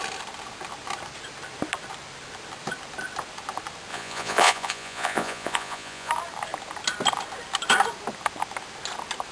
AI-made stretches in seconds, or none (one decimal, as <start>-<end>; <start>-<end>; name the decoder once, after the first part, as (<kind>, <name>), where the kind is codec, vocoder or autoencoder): 3.9-6.1 (vocoder, Vocos)